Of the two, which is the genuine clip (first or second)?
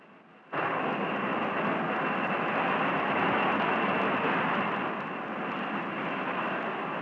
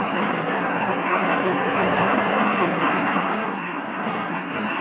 first